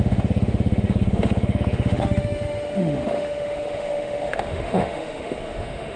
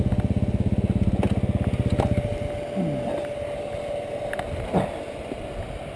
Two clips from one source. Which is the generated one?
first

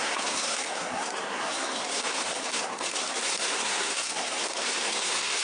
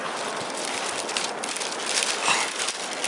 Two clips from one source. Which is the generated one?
first